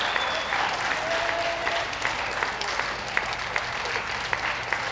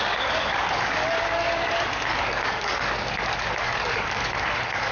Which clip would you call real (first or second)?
first